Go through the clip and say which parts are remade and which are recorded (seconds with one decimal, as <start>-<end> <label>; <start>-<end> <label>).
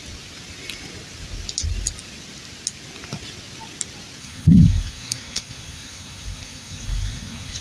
0.0-4.2 recorded; 4.2-7.6 remade